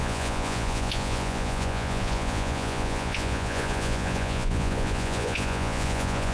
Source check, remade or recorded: remade